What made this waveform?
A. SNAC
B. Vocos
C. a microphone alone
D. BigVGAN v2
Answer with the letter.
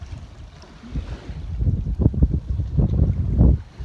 C